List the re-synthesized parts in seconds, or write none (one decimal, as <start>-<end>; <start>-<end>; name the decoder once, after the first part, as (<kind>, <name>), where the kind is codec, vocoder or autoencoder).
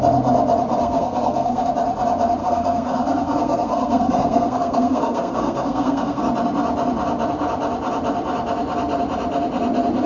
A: 0.8-1.7 (codec, SNAC); 2.4-6.2